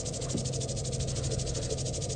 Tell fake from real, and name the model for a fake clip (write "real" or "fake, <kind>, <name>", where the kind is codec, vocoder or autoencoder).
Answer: real